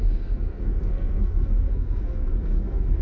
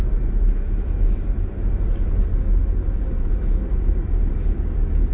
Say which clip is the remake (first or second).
first